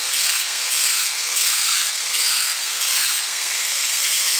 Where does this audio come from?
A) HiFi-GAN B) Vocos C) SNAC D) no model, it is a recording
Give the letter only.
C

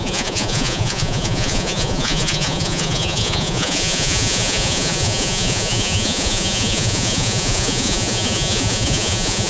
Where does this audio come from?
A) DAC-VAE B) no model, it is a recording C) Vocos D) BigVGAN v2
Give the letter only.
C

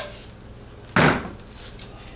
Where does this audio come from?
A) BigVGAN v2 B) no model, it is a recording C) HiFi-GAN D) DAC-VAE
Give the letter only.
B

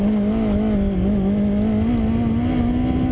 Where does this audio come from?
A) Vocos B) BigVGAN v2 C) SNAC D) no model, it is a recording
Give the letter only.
D